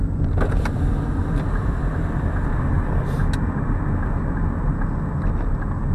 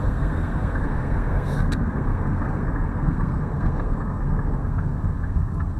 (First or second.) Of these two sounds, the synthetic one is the second